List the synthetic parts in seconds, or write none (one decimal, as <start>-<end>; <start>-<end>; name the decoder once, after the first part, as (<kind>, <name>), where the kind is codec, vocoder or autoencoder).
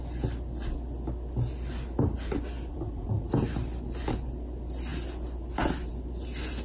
2.7-3.3 (vocoder, Vocos)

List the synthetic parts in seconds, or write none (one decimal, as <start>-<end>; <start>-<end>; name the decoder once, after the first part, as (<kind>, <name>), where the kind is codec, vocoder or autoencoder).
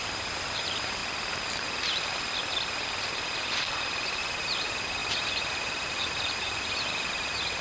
0.0-1.0 (vocoder, BigVGAN v2); 4.2-7.6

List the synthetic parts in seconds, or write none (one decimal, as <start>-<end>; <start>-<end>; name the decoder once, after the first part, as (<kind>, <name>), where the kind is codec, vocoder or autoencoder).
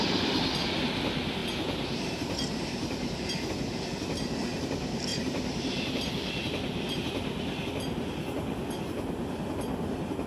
1.4-3.5 (vocoder, BigVGAN v2); 5.1-6.1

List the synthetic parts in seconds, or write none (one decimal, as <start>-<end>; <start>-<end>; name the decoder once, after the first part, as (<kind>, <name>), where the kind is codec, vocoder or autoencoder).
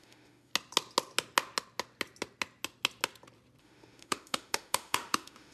0.0-0.5 (autoencoder, DAC-VAE); 3.6-5.5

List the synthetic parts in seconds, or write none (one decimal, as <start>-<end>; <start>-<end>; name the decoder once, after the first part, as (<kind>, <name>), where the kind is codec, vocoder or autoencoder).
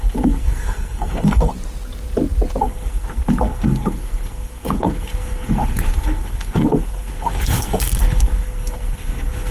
0.0-1.5 (codec, SNAC); 2.6-9.5